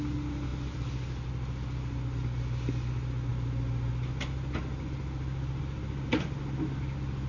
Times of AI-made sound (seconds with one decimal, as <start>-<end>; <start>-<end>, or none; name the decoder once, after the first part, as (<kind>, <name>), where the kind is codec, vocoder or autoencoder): none